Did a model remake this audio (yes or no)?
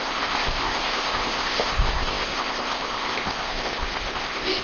yes